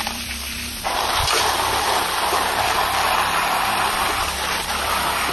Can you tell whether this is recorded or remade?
remade